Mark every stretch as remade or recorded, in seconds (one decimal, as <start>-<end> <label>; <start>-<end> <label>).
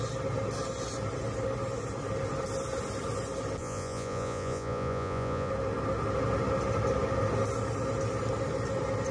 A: 0.0-3.6 recorded; 3.6-5.5 remade; 5.5-9.1 recorded